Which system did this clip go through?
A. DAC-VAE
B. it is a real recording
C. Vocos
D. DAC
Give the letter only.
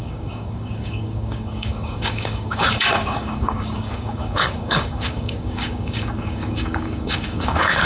D